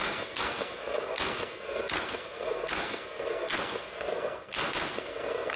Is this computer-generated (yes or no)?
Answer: yes